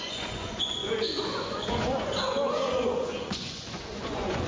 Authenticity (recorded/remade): remade